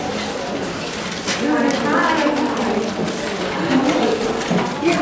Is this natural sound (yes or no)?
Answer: yes